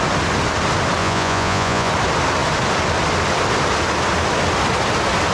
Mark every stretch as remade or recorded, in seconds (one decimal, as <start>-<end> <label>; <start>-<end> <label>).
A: 0.0-1.0 recorded; 1.0-1.9 remade; 1.9-5.3 recorded